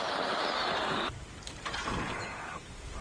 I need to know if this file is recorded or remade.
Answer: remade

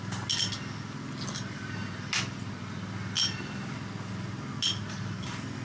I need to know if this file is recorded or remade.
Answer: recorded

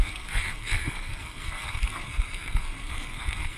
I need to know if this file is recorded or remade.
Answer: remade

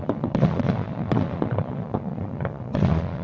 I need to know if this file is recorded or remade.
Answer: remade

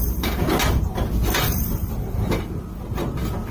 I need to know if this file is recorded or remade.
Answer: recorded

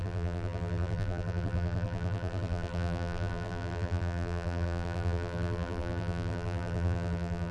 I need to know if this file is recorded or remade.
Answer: remade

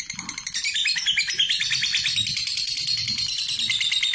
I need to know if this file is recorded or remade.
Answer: remade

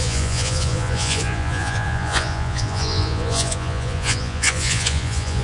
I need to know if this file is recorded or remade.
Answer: remade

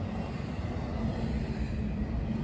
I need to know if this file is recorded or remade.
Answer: recorded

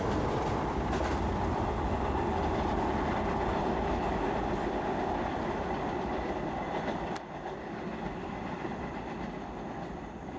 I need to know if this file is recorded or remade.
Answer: recorded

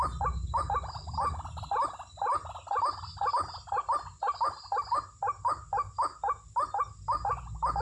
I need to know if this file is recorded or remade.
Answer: recorded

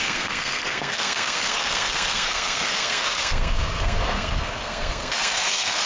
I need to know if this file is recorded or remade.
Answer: remade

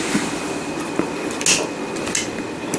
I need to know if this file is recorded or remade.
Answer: recorded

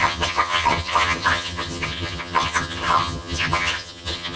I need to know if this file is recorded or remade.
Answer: remade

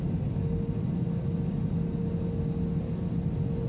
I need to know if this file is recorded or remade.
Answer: recorded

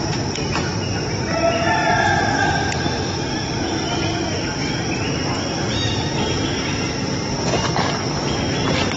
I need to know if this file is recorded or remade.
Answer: recorded